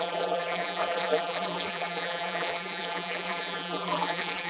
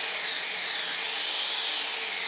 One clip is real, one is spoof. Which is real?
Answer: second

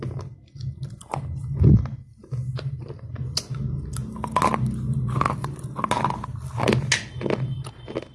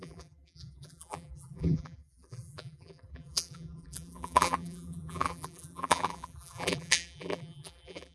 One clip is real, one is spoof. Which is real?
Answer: first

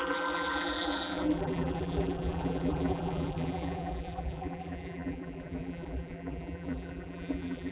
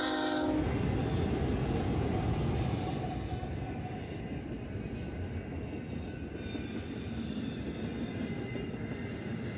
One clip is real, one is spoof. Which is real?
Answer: second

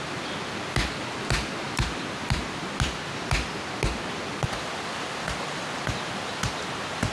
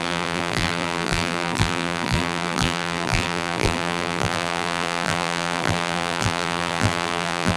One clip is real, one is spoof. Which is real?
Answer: first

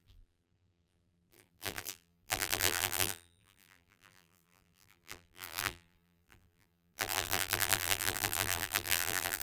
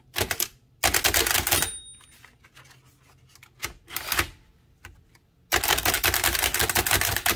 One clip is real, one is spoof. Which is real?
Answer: second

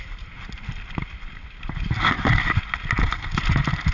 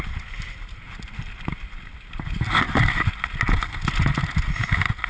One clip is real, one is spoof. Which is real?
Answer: second